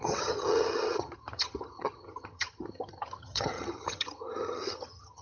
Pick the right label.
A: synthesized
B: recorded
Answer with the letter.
A